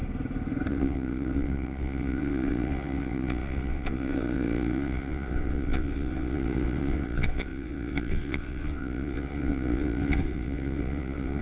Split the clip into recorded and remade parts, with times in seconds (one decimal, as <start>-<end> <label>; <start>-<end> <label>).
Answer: 0.0-0.7 recorded; 0.7-11.4 remade